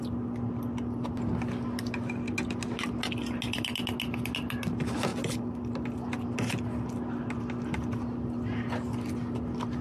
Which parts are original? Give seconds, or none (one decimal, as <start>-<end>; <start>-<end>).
0.0-9.8